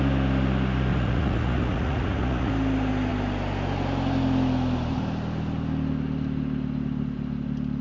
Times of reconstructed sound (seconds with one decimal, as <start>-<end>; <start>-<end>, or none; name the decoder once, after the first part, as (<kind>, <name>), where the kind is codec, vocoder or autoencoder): 0.9-2.5 (vocoder, Vocos)